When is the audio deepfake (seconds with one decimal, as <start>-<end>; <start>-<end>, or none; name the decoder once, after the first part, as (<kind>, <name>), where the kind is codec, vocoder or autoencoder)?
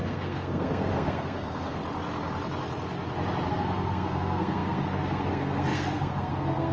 0.0-1.8 (codec, SNAC); 3.5-6.7